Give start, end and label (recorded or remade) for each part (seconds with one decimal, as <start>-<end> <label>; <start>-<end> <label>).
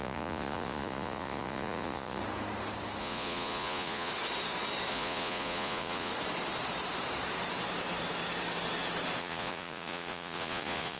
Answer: 0.0-2.2 remade; 2.2-3.0 recorded; 3.0-4.1 remade; 4.1-4.9 recorded; 4.9-6.1 remade; 6.1-9.2 recorded; 9.2-11.0 remade